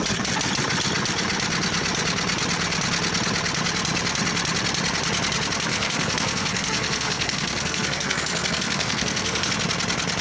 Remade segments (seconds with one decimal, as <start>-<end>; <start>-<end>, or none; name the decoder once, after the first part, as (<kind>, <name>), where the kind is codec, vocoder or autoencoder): 5.7-9.5 (codec, SNAC)